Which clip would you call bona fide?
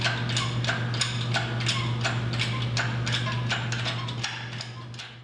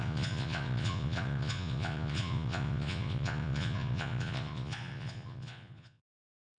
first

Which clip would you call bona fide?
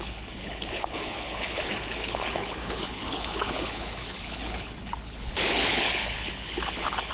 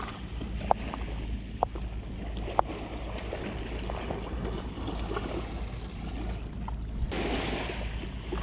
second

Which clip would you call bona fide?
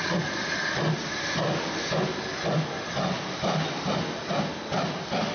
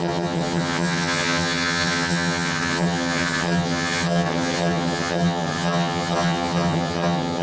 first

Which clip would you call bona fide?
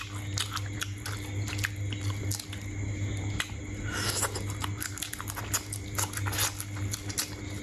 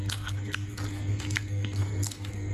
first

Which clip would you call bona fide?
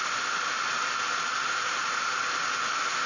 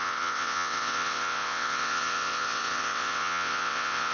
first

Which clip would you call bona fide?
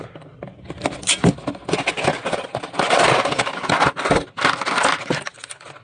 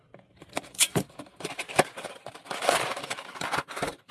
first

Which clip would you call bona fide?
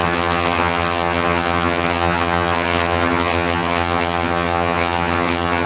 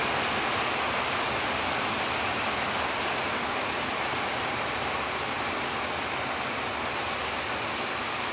second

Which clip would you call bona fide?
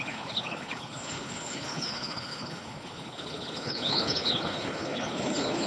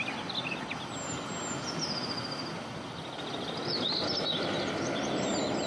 second